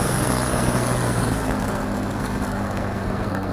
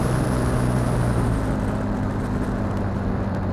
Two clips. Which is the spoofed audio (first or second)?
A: first